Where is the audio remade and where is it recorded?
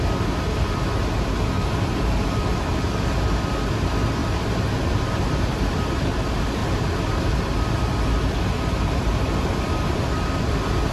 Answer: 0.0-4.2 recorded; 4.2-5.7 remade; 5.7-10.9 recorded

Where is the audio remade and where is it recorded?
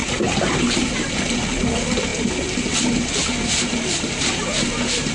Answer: 0.0-1.1 remade; 1.1-3.2 recorded; 3.2-5.1 remade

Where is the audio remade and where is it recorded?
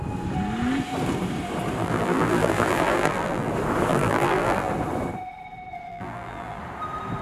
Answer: 0.0-1.8 recorded; 1.8-3.5 remade; 3.5-3.9 recorded; 3.9-4.7 remade; 4.7-5.9 recorded; 5.9-6.6 remade; 6.6-7.2 recorded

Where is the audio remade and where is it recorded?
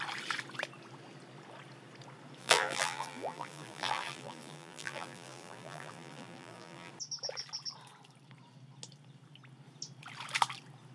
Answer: 0.0-2.4 recorded; 2.4-6.9 remade; 6.9-10.9 recorded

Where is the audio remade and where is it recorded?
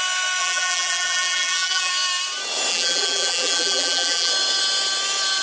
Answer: 0.0-0.4 recorded; 0.4-1.9 remade; 1.9-2.7 recorded; 2.7-4.3 remade; 4.3-5.4 recorded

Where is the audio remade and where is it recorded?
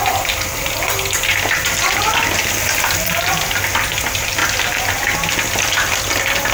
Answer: 0.0-4.4 remade; 4.4-6.5 recorded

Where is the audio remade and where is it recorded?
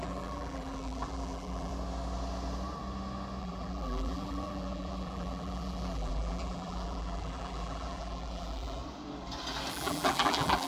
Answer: 0.0-1.7 remade; 1.7-3.4 recorded; 3.4-8.8 remade; 8.8-9.7 recorded; 9.7-10.7 remade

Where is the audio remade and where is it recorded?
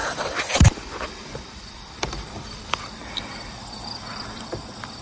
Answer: 0.0-5.0 remade